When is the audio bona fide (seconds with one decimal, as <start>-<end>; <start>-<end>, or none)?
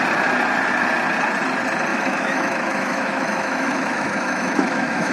0.0-1.9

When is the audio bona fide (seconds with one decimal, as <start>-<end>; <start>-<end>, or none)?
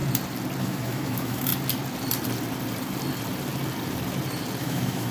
0.0-0.6; 1.5-4.6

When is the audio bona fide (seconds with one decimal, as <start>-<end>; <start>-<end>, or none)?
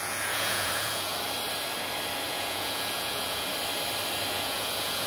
1.1-2.3; 3.5-4.3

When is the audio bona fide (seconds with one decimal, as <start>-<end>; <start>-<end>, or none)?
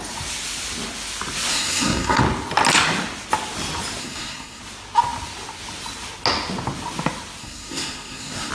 0.0-1.5; 2.2-4.0; 4.6-7.4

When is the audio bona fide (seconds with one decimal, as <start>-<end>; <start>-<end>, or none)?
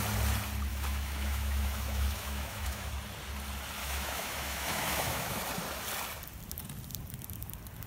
0.0-0.7; 2.9-3.8; 5.4-7.9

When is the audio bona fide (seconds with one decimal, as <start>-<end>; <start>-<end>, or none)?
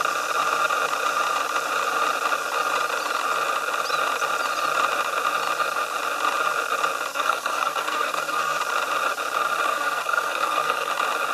0.0-7.1; 8.6-9.7; 10.9-11.3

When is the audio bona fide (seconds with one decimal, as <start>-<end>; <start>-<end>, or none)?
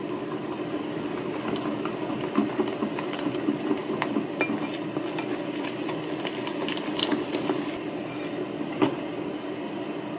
0.0-10.2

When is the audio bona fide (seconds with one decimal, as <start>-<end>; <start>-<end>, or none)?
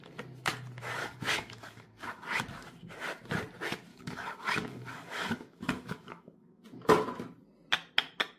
0.0-1.0; 2.4-3.9; 6.6-8.4